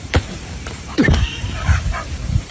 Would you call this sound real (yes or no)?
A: no